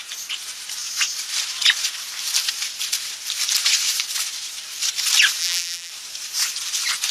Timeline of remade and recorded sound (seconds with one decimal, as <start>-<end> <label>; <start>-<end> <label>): 0.0-5.4 recorded; 5.4-5.9 remade; 5.9-7.1 recorded

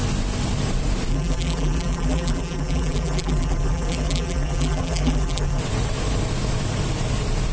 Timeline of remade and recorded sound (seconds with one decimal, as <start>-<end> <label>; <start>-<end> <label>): 0.0-1.1 recorded; 1.1-5.6 remade; 5.6-7.5 recorded

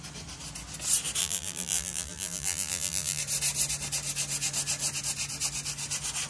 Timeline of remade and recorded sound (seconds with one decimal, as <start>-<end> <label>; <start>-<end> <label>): 0.0-1.2 recorded; 1.2-3.2 remade; 3.2-6.3 recorded

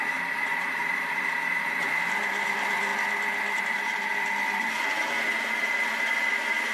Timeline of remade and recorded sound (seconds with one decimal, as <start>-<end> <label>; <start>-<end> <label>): 0.0-2.9 remade; 2.9-3.6 recorded; 3.6-4.1 remade; 4.1-5.4 recorded; 5.4-6.7 remade

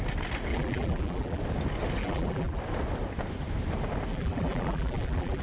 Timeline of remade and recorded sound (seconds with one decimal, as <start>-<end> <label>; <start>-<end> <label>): 0.0-0.5 recorded; 0.5-1.4 remade; 1.4-2.0 recorded; 2.0-2.6 remade; 2.6-4.1 recorded; 4.1-5.4 remade

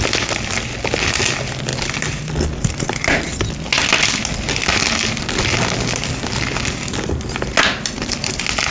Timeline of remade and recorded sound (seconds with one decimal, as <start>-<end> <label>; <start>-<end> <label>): 0.0-1.7 recorded; 1.7-3.2 remade; 3.2-8.7 recorded